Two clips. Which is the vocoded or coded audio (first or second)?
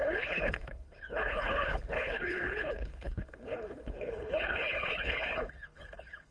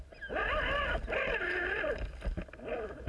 first